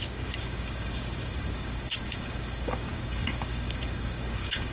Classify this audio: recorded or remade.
remade